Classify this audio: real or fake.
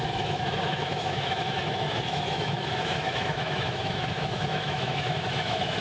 fake